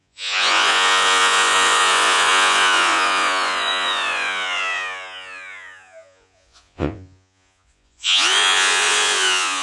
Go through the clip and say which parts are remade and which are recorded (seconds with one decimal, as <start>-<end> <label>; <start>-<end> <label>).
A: 0.0-9.6 remade